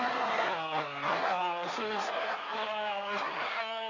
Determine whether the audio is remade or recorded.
remade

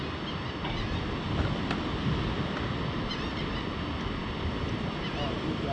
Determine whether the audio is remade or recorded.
recorded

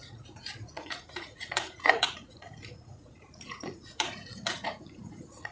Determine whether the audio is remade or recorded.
remade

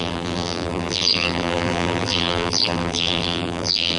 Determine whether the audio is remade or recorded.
remade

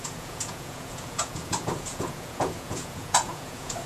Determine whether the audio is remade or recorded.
remade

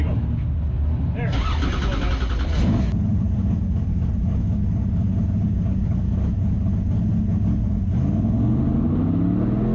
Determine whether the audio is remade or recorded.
recorded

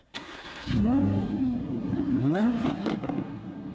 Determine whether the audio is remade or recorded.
remade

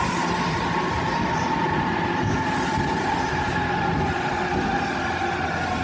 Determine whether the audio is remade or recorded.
recorded